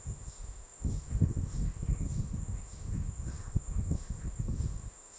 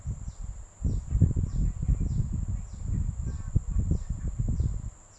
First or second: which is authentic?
second